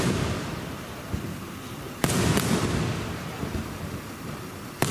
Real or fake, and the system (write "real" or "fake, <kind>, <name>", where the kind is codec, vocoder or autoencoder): fake, vocoder, BigVGAN v2